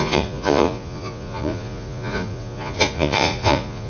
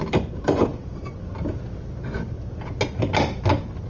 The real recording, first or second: second